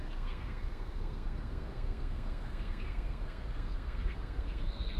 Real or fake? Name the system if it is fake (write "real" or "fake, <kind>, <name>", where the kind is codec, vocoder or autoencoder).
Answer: fake, codec, SNAC